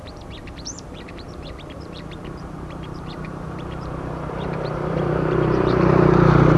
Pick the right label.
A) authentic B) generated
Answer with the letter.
B